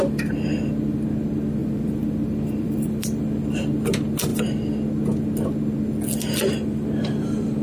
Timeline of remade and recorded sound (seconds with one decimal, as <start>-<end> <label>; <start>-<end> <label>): 0.0-1.6 recorded; 1.6-3.2 remade; 3.2-7.6 recorded